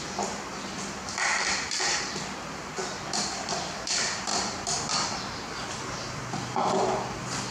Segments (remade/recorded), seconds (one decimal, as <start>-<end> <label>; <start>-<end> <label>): 0.0-4.3 remade; 4.3-7.5 recorded